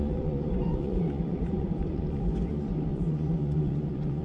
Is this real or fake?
fake